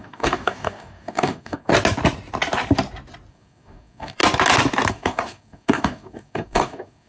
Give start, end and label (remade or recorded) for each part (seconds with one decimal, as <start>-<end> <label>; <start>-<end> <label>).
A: 0.0-1.7 remade; 1.7-3.3 recorded; 3.3-4.2 remade; 4.2-4.9 recorded; 4.9-7.1 remade